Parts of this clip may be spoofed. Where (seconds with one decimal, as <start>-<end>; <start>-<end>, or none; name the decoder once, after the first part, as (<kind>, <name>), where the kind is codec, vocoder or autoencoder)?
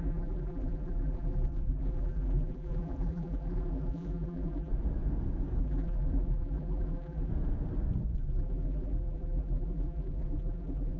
0.0-4.7 (vocoder, BigVGAN v2); 5.6-7.3; 8.2-11.0